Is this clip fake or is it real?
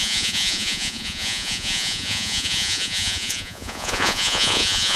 fake